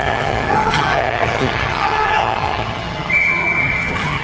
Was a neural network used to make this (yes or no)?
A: yes